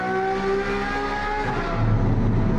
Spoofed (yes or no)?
no